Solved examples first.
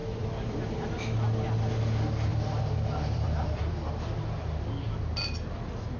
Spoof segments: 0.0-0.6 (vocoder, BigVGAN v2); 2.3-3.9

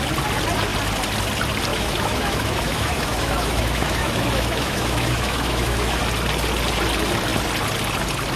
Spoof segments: 1.7-6.0 (autoencoder, DAC-VAE)

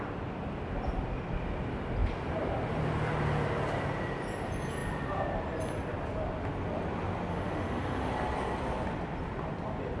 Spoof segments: 7.3-8.1 (autoencoder, DAC-VAE)

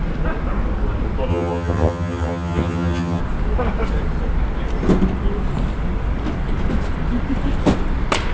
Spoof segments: 1.3-3.2 (vocoder, HiFi-GAN)